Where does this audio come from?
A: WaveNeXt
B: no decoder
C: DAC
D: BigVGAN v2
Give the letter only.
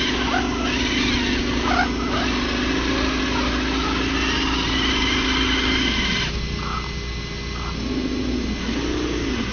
B